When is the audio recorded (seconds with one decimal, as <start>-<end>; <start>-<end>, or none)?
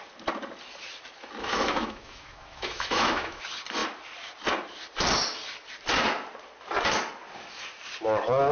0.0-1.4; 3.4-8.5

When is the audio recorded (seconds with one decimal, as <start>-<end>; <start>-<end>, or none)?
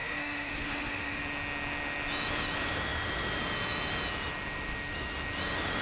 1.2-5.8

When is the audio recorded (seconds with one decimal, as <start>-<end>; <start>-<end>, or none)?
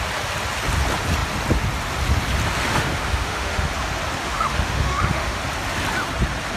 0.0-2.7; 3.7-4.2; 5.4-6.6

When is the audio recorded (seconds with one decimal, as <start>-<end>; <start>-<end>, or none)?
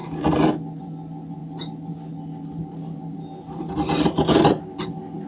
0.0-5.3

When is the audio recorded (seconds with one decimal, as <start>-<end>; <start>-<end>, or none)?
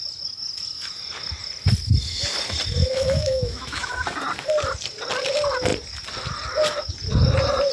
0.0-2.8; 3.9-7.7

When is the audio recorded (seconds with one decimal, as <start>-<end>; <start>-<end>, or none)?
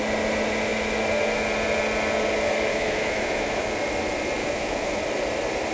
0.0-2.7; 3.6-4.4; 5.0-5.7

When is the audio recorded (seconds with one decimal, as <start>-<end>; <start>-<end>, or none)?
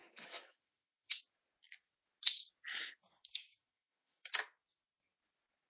1.2-2.7; 4.3-5.7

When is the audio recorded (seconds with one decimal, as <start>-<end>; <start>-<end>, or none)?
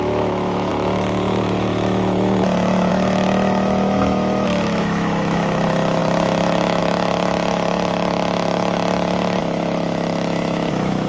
none